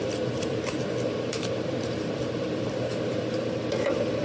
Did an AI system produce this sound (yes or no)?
yes